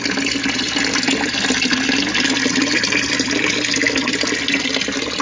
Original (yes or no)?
yes